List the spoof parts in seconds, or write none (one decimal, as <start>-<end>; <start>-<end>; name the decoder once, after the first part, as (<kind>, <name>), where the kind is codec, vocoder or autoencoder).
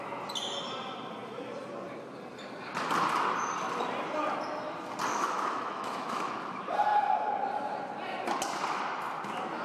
5.1-6.3 (autoencoder, DAC-VAE)